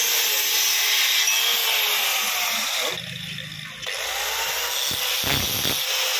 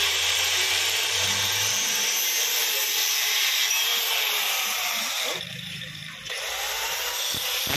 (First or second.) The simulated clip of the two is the second